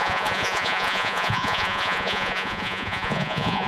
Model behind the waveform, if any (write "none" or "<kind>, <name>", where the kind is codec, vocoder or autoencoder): vocoder, Vocos